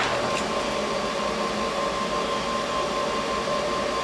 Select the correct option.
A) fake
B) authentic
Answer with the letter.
B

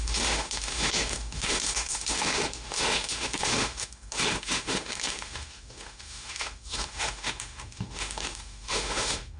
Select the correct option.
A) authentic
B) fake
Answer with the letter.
B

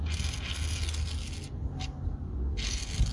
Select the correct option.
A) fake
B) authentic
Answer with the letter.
B